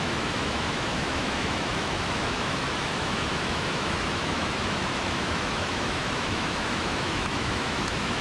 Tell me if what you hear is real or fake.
fake